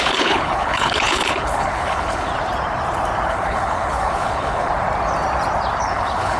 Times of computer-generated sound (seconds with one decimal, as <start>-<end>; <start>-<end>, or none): 0.0-2.3; 3.3-4.7; 5.8-6.4